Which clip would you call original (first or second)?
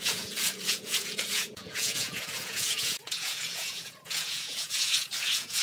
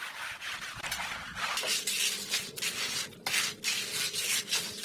second